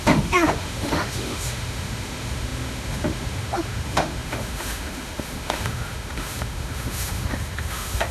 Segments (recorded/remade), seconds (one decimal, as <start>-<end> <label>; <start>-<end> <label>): 0.0-8.1 remade